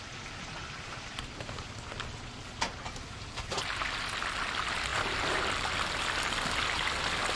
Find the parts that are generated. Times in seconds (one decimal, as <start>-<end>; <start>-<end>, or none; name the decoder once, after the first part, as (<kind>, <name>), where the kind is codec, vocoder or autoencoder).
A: 0.6-3.7 (vocoder, BigVGAN v2); 4.9-5.7